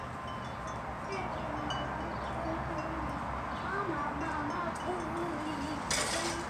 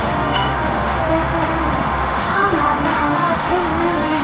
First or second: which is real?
first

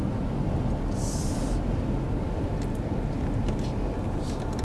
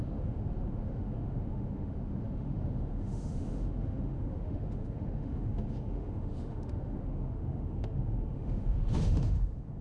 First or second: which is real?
first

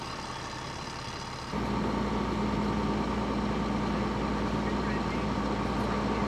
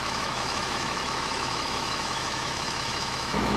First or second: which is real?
first